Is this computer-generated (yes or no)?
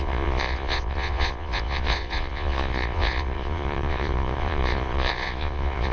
yes